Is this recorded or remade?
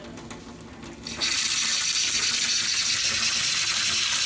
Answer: recorded